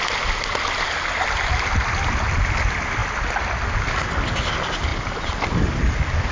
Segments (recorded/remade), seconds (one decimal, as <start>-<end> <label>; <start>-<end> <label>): 0.0-6.3 recorded